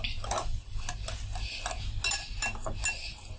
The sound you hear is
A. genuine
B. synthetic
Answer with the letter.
A